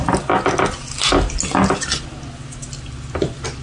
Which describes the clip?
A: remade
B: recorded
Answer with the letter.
B